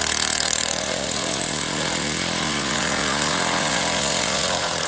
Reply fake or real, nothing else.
fake